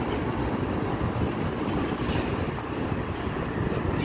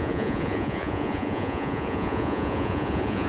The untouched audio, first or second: first